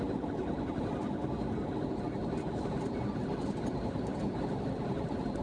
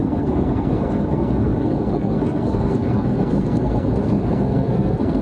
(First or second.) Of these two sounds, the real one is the first